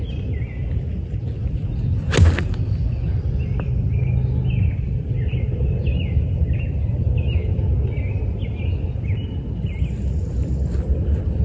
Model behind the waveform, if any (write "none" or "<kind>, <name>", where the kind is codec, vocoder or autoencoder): none